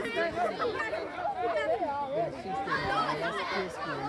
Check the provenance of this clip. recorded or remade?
recorded